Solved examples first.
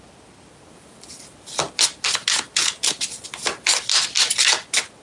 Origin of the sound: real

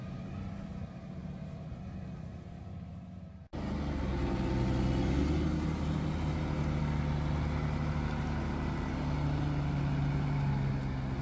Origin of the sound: real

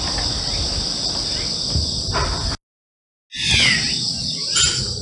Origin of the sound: real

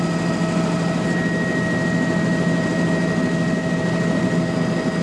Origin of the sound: real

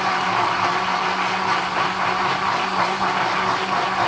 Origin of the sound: real